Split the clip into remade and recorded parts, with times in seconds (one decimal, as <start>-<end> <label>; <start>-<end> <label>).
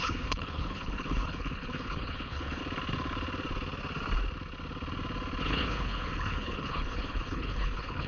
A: 0.0-2.6 remade; 2.6-5.4 recorded; 5.4-8.1 remade